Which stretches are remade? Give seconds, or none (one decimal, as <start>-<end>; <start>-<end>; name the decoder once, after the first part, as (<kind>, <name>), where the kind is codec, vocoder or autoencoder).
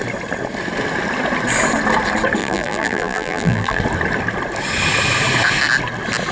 2.4-3.8 (vocoder, BigVGAN v2)